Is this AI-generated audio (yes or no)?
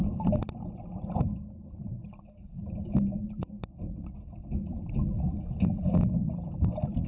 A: no